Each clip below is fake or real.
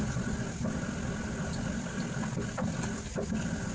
real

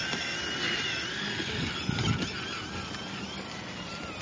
real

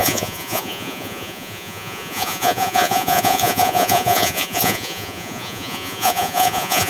fake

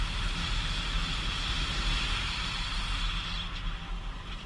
real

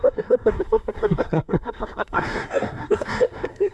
fake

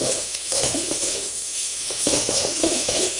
fake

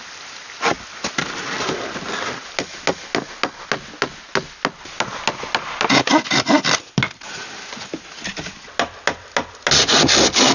real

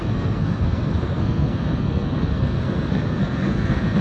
fake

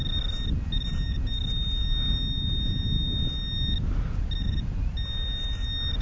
real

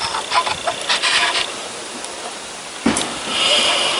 real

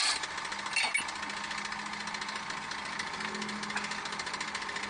real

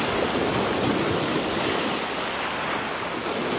real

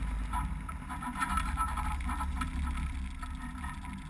real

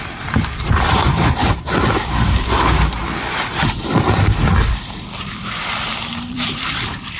fake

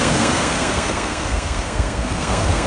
fake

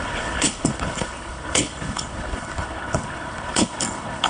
fake